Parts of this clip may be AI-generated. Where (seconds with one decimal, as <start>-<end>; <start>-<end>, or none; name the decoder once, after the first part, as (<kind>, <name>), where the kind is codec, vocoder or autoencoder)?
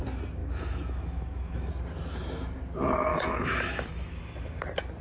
0.4-1.7 (autoencoder, DAC-VAE); 3.1-4.2